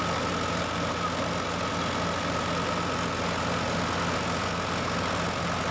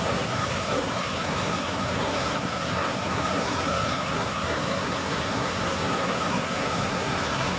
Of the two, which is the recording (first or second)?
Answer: first